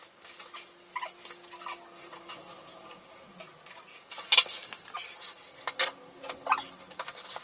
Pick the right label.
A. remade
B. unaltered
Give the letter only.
B